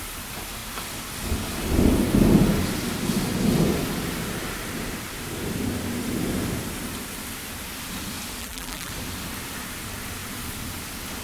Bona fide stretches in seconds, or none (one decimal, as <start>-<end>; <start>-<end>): 0.0-8.4; 8.9-11.2